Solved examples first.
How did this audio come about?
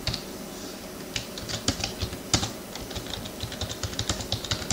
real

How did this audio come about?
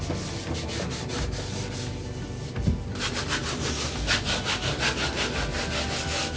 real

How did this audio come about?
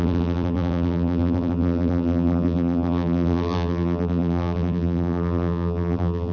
fake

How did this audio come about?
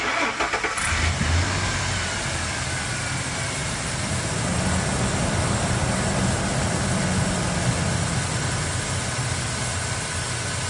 real